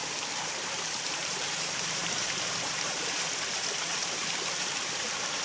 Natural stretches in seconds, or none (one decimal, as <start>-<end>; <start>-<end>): 3.2-4.0